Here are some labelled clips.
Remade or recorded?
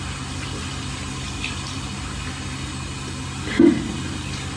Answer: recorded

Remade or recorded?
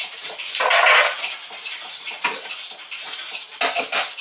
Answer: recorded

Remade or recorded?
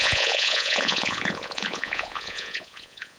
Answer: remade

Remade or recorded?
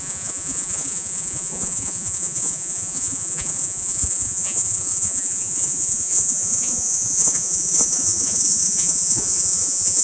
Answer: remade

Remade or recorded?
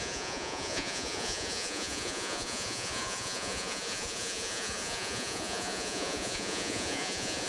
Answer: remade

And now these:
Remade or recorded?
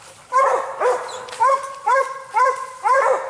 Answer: remade